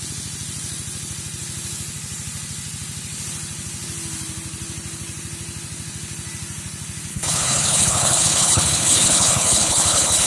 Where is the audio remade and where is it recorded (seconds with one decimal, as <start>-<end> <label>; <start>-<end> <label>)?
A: 0.0-7.1 recorded; 7.1-10.3 remade